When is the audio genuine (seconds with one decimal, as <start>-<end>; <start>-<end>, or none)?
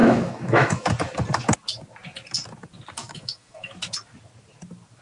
0.9-3.0; 3.7-5.0